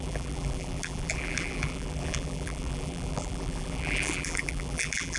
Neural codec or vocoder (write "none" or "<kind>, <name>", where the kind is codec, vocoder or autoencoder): vocoder, BigVGAN v2